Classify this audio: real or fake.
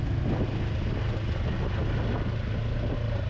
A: real